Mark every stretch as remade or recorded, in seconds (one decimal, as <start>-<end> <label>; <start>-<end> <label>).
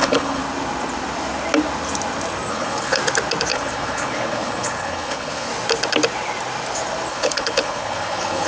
0.0-0.4 remade; 0.4-2.5 recorded; 2.5-3.0 remade; 3.0-3.5 recorded; 3.5-5.5 remade; 5.5-7.1 recorded; 7.1-8.5 remade